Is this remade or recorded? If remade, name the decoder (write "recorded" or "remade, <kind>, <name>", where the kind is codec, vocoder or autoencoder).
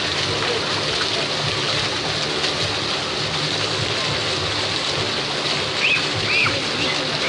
recorded